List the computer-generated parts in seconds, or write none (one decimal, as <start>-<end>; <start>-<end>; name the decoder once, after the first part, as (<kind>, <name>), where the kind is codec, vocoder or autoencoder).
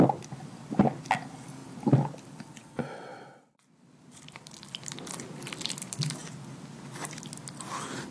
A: none